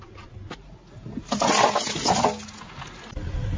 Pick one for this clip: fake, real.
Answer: real